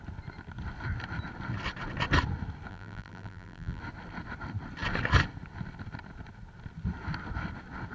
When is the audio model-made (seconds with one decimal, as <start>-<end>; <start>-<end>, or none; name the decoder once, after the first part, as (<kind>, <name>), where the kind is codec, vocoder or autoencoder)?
2.7-3.8 (vocoder, BigVGAN v2)